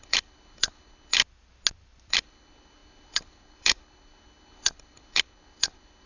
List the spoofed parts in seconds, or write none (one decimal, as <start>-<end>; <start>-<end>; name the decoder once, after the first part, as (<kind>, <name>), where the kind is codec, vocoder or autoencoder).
0.0-1.2 (codec, HILCodec); 2.1-6.1